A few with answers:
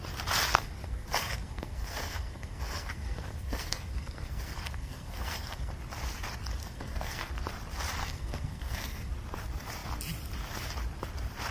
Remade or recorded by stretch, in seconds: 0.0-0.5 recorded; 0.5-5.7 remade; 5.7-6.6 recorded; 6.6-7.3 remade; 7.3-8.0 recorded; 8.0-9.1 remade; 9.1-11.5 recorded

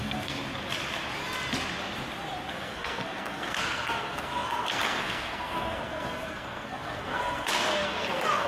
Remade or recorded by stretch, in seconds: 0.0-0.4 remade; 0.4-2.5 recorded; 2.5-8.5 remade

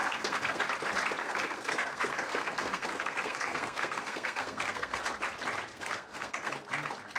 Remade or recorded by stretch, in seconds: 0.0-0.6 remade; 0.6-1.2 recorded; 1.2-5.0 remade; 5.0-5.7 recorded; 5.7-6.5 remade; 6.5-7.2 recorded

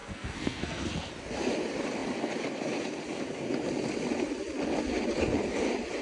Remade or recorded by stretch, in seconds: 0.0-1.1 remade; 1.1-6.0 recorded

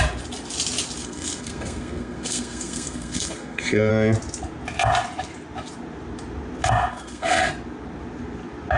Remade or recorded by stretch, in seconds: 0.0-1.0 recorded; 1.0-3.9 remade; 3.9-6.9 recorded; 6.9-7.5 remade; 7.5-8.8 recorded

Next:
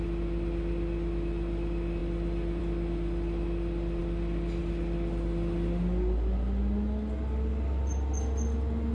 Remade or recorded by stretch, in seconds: 0.0-8.9 recorded